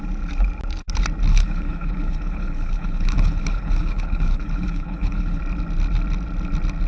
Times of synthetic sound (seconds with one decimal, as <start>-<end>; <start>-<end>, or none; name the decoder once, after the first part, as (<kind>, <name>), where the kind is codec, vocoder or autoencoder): 1.3-5.4 (codec, HILCodec)